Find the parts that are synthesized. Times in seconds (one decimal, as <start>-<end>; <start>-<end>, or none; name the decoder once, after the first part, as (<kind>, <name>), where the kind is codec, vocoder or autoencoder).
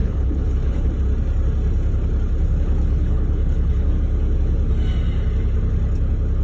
0.0-0.9 (codec, HILCodec); 2.8-3.9